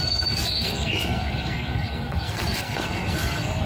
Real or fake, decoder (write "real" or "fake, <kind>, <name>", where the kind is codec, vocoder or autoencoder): fake, codec, SNAC